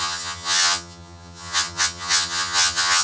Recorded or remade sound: remade